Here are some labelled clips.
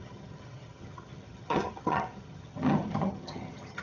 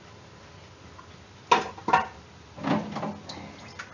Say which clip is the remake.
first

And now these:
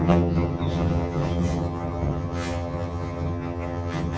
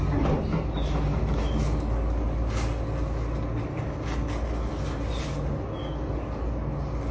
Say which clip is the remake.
first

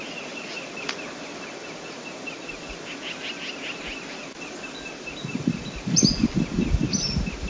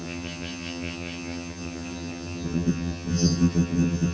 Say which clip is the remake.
second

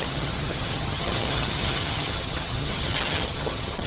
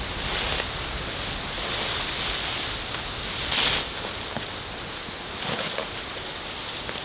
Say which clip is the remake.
first